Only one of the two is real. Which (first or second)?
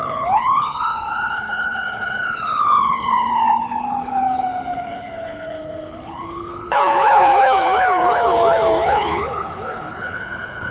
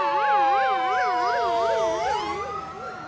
second